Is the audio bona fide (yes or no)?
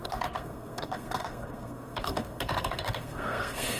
no